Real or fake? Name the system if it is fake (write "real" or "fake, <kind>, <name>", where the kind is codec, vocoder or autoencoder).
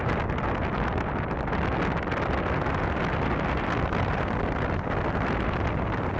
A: real